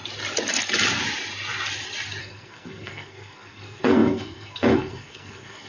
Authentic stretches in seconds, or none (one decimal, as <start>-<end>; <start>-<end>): 0.0-2.2